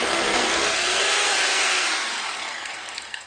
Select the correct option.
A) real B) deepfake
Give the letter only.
B